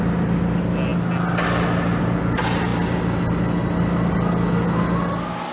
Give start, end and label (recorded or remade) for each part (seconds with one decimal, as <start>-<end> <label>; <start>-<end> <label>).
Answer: 0.0-5.5 recorded